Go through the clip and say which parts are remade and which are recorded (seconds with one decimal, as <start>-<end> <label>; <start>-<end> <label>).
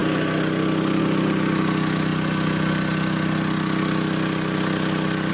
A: 0.0-5.3 recorded